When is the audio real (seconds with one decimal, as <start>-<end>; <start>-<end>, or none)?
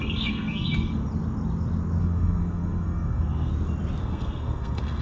1.0-2.0; 3.5-4.0